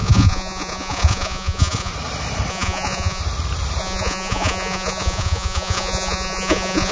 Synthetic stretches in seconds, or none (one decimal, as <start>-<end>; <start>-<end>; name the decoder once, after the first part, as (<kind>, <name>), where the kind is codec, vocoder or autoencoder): 0.0-1.9 (vocoder, Vocos); 2.5-3.2; 3.8-6.9